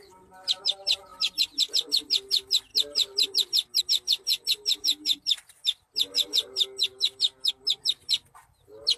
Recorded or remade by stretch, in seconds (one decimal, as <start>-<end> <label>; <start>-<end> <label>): 0.0-6.9 recorded; 6.9-7.5 remade; 7.5-9.0 recorded